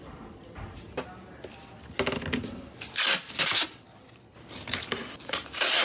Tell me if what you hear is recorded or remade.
recorded